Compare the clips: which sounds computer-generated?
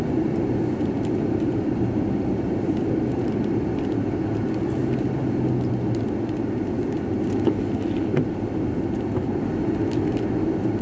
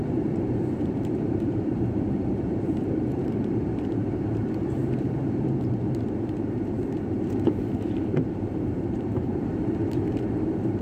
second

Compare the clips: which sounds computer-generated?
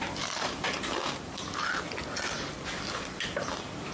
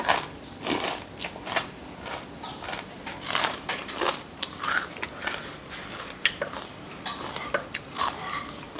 second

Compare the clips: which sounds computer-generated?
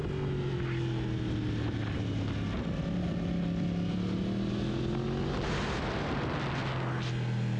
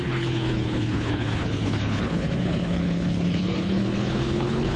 second